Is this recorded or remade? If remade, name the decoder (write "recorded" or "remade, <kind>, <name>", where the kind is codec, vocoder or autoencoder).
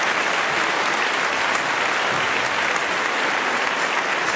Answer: recorded